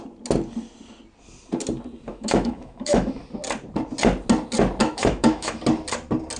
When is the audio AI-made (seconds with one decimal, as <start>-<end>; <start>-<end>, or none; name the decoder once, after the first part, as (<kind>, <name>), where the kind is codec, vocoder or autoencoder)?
2.1-3.2 (autoencoder, DAC-VAE); 4.8-5.6